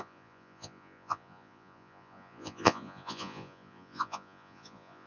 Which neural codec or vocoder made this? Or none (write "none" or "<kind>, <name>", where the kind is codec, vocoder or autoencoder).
vocoder, Vocos